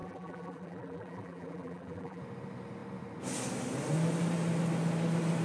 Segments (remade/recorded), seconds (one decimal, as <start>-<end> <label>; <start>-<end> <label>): 0.0-2.2 remade; 2.2-5.4 recorded

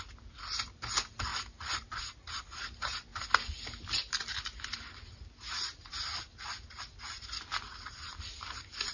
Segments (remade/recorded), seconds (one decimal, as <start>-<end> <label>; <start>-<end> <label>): 0.0-1.3 recorded; 1.3-2.4 remade; 2.4-8.1 recorded; 8.1-8.9 remade

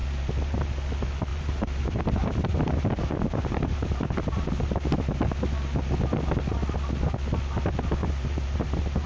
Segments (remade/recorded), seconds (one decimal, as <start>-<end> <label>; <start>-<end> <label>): 0.0-0.7 remade; 0.7-1.3 recorded; 1.3-4.5 remade; 4.5-8.0 recorded; 8.0-9.1 remade

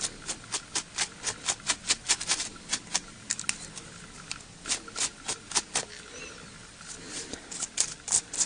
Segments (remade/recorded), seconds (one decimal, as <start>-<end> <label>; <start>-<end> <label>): 0.0-8.5 recorded